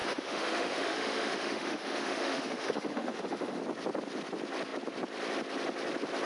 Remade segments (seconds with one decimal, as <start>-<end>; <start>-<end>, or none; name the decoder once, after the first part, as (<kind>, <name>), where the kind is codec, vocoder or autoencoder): 0.0-3.6 (autoencoder, DAC-VAE)